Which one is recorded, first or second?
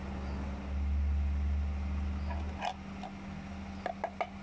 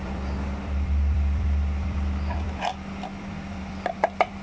first